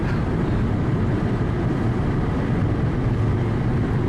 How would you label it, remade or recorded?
recorded